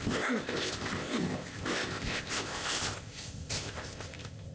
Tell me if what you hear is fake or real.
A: fake